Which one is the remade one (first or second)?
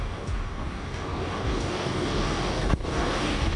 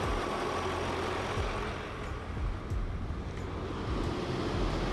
first